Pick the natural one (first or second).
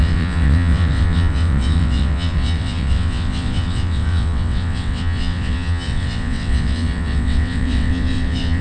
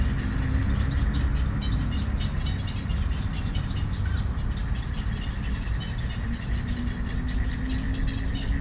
second